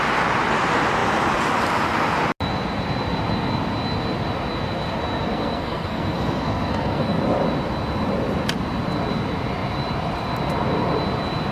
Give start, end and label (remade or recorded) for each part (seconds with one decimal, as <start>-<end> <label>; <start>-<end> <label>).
0.0-5.2 recorded; 5.2-7.2 remade; 7.2-11.5 recorded